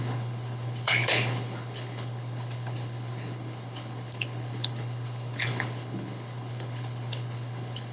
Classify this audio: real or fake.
fake